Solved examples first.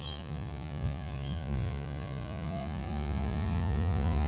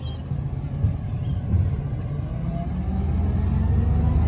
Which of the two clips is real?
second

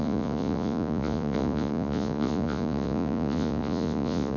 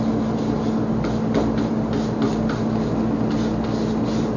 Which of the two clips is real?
second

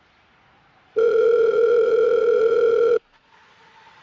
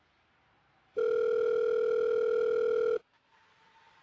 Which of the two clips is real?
second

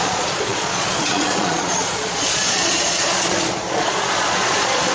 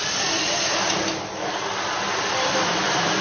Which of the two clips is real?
second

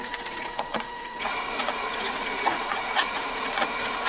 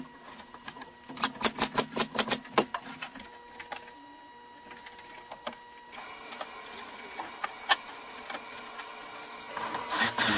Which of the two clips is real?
second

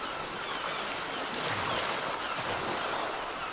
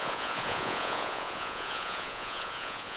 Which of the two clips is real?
first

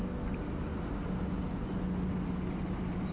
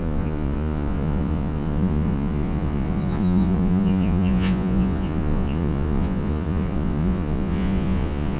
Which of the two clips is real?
first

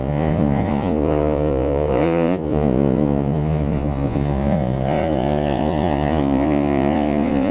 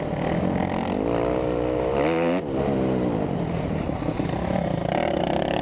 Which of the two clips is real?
second